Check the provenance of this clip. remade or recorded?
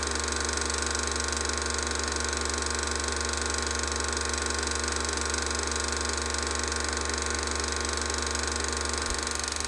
recorded